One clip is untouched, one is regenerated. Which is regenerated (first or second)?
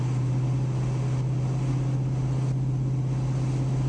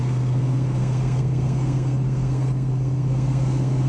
second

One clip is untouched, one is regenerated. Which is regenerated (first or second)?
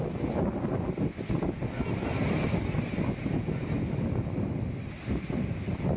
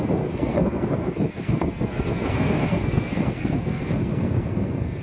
second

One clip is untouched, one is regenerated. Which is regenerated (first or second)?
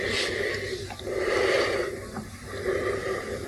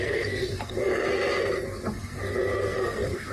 second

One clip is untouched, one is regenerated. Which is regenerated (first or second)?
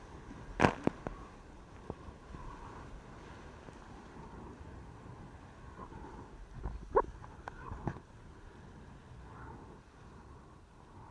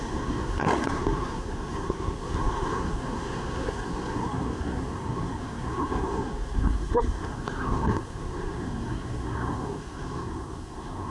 second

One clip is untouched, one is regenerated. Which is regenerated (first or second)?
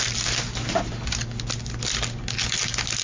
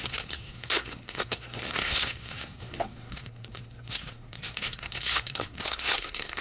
second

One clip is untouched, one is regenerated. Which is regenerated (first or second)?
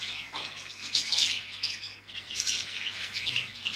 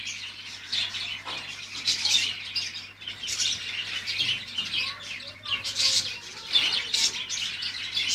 first